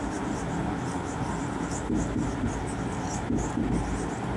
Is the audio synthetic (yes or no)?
no